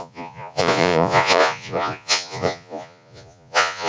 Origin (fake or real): fake